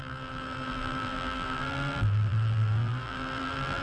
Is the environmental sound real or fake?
fake